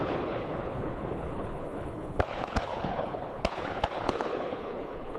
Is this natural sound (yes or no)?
no